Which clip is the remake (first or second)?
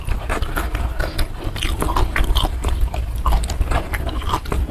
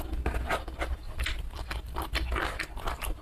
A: first